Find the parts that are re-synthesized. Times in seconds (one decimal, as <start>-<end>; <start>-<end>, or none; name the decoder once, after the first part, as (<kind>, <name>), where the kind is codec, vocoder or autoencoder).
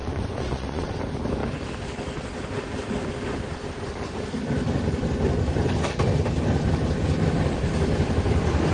0.0-0.9 (vocoder, Vocos)